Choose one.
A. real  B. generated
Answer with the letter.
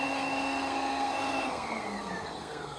B